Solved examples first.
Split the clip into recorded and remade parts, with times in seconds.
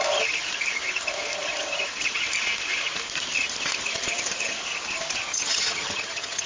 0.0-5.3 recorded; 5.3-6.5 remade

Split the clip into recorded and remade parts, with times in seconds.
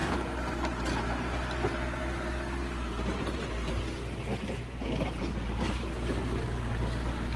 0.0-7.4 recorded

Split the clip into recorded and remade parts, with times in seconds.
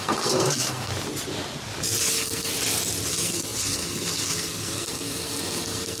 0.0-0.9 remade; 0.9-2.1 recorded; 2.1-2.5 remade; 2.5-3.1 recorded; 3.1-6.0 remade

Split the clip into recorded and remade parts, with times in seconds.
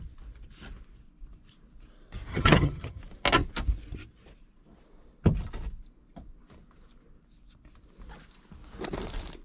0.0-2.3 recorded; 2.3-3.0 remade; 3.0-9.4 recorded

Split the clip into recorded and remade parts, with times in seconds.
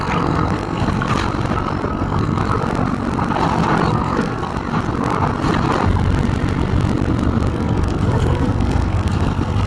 0.0-1.1 remade; 1.1-1.9 recorded; 1.9-2.4 remade; 2.4-3.9 recorded; 3.9-4.5 remade; 4.5-7.5 recorded; 7.5-9.7 remade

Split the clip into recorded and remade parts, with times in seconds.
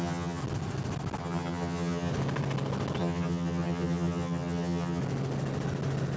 0.0-0.4 remade; 0.4-1.2 recorded; 1.2-2.1 remade; 2.1-3.0 recorded; 3.0-5.0 remade; 5.0-6.2 recorded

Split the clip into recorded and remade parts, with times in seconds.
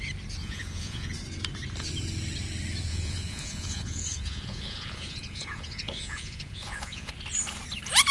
0.0-0.4 recorded; 0.4-1.1 remade; 1.1-2.9 recorded; 2.9-7.1 remade; 7.1-8.1 recorded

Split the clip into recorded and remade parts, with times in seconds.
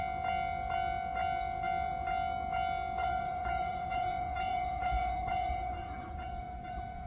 0.0-3.0 recorded; 3.0-7.1 remade